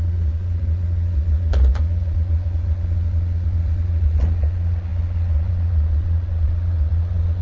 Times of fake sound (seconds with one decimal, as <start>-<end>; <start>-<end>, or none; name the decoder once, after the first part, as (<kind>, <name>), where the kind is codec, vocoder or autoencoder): 0.0-7.4 (vocoder, Vocos)